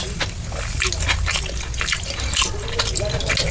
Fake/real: real